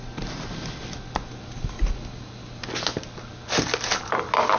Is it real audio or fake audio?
real